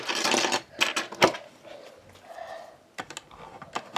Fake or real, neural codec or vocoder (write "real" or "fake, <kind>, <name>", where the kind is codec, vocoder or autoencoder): real